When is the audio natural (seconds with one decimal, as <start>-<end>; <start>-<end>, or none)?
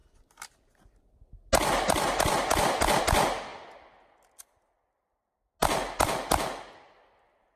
0.0-7.6